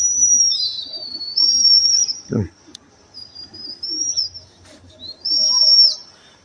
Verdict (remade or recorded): remade